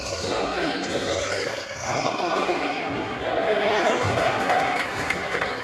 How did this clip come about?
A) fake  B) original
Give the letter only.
A